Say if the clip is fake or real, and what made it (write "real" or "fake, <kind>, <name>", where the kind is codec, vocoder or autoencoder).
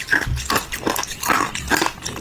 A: real